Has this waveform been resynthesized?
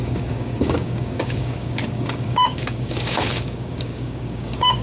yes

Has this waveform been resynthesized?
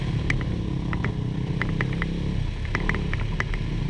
no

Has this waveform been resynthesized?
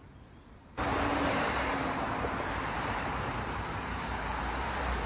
yes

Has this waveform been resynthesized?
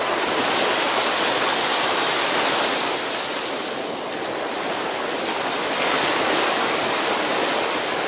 no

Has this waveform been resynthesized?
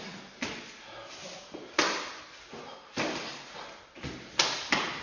no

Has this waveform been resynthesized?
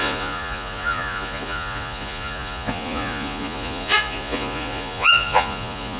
yes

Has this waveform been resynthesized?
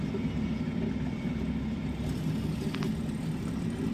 no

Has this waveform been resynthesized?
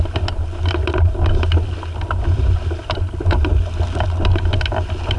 no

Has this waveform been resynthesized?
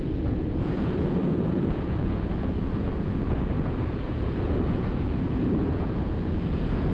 yes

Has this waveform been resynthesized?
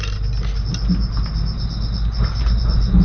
no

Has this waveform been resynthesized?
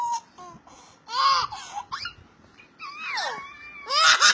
no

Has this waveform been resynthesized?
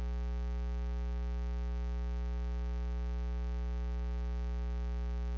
no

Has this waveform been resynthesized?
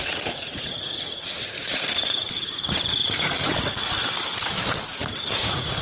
yes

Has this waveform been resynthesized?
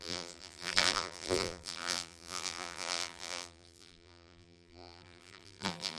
yes